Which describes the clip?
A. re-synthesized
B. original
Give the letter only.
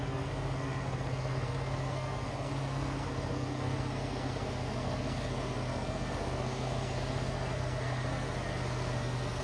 A